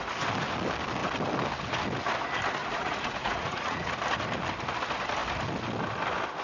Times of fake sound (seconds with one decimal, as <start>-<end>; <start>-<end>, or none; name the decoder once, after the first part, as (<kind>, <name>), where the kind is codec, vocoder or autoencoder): 2.6-3.9 (vocoder, Vocos)